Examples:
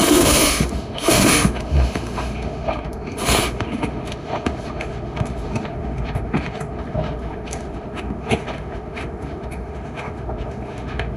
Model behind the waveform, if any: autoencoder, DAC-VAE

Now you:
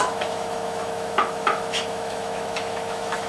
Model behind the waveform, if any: autoencoder, DAC-VAE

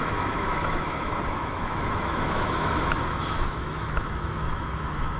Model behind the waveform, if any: autoencoder, DAC-VAE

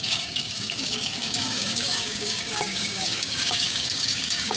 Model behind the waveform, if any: codec, DAC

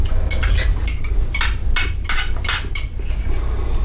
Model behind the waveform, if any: none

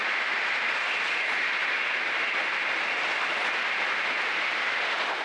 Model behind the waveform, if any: none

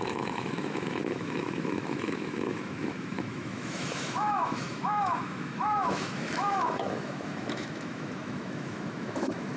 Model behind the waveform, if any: autoencoder, DAC-VAE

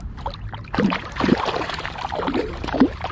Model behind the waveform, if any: vocoder, BigVGAN v2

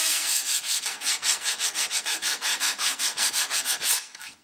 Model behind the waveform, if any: codec, SNAC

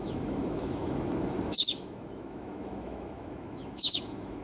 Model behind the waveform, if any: autoencoder, DAC-VAE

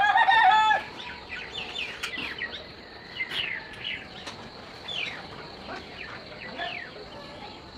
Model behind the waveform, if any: none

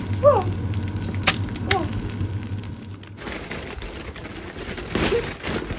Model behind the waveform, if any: none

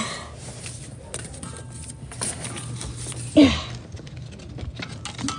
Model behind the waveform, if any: none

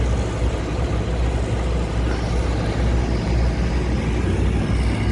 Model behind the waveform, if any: none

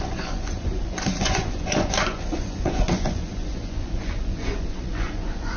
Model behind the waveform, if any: vocoder, Vocos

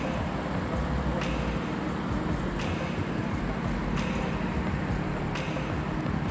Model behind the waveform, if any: none